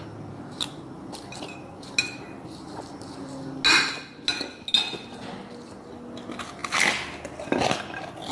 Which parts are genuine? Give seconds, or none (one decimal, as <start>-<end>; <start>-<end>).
0.0-8.3